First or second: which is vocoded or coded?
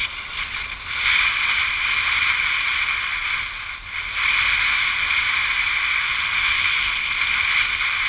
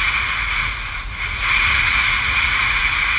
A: second